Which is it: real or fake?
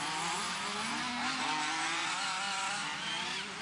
real